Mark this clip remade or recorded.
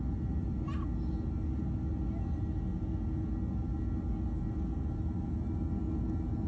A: recorded